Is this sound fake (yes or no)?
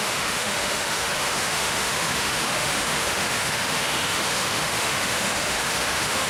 yes